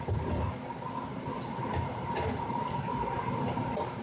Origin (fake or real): real